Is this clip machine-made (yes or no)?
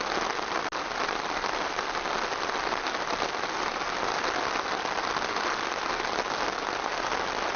no